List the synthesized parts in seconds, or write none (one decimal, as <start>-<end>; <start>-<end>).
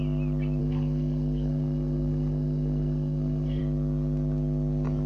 0.6-3.6